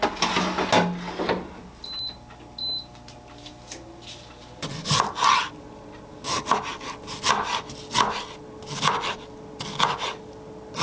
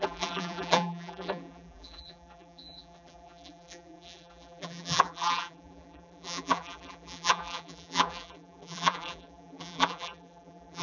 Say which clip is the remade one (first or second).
second